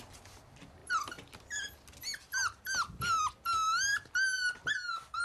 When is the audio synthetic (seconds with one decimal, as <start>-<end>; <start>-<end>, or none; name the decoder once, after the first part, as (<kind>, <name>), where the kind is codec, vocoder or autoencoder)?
none